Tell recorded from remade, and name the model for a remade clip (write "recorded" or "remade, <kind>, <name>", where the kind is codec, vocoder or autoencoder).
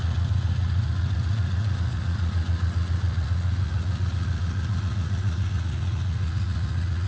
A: remade, vocoder, Vocos